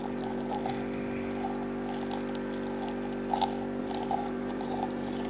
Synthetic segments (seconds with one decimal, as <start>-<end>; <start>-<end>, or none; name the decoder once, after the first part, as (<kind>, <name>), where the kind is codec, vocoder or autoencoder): 0.0-0.6 (vocoder, BigVGAN v2); 3.8-5.3